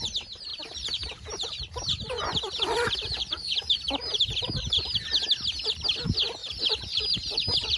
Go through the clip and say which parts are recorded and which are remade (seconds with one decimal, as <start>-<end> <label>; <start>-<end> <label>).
0.0-0.5 recorded; 0.5-5.2 remade; 5.2-6.4 recorded; 6.4-7.8 remade